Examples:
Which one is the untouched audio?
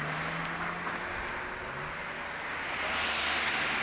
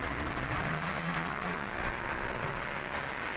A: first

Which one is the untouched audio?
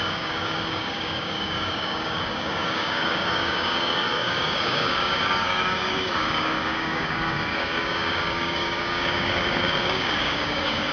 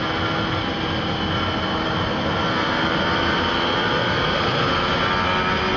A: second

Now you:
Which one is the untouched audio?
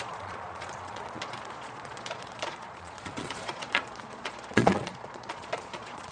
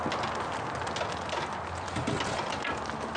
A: second